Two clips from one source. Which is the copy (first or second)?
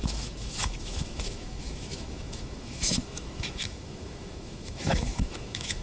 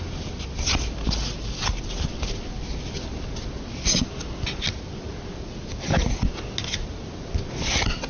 first